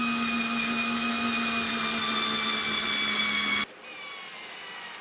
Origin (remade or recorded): recorded